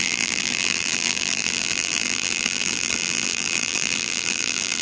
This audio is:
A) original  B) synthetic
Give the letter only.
B